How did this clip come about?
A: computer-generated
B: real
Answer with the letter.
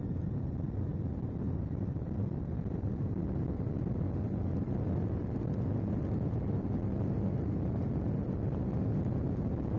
B